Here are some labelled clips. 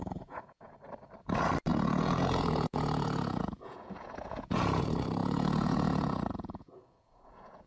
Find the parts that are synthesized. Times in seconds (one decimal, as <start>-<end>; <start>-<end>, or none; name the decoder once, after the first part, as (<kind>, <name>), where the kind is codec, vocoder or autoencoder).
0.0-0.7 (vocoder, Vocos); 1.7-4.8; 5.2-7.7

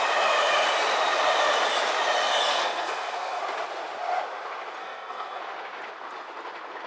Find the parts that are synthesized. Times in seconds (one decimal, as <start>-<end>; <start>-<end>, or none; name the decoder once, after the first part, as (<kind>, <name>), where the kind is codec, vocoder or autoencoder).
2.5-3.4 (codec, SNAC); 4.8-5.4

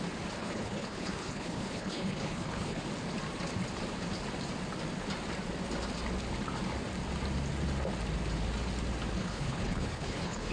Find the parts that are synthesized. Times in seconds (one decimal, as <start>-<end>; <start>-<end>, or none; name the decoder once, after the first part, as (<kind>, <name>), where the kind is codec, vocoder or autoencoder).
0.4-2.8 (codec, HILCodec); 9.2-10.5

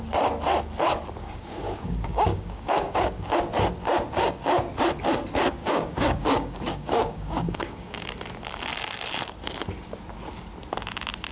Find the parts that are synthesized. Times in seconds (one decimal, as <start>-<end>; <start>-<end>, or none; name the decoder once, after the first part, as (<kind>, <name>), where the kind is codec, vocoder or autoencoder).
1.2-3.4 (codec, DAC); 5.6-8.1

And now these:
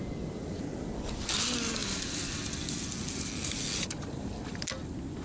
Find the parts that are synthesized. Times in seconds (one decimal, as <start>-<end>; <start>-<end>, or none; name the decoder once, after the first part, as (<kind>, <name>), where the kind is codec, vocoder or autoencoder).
0.0-1.2 (vocoder, BigVGAN v2); 1.8-5.2

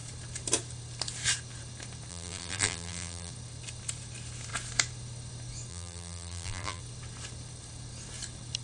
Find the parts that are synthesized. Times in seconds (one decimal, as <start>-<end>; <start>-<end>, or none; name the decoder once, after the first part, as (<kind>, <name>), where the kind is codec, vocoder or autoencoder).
2.1-3.3 (vocoder, BigVGAN v2); 5.7-6.8

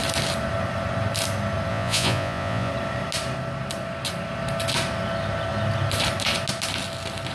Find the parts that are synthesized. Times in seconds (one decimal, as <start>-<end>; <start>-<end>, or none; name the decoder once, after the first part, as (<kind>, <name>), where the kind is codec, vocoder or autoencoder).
1.7-2.7 (vocoder, Vocos)

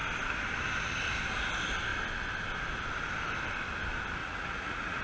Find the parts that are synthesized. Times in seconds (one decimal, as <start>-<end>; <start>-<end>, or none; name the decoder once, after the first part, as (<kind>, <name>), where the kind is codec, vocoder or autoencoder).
4.2-5.0 (vocoder, Vocos)